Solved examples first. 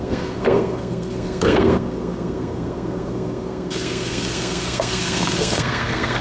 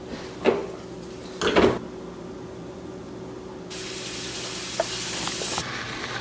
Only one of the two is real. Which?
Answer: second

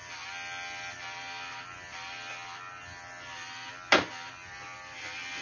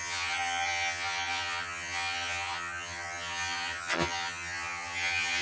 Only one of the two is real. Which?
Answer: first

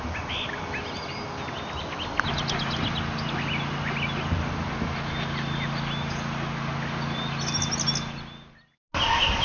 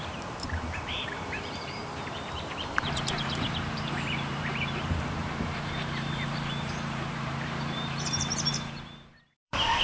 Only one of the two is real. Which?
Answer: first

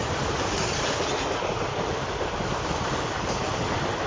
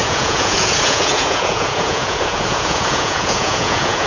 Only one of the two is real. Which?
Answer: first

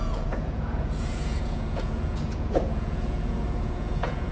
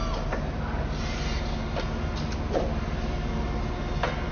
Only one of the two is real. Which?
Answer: second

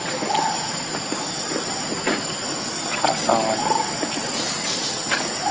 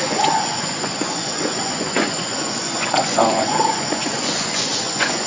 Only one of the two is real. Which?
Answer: first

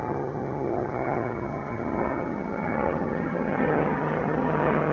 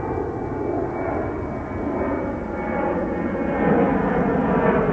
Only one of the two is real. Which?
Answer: second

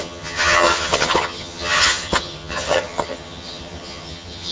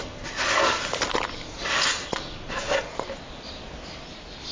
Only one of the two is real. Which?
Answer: second